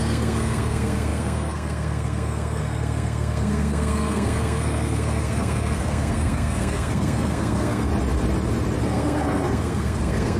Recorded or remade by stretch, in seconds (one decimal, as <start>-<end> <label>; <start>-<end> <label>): 0.0-7.9 remade; 7.9-8.8 recorded; 8.8-10.4 remade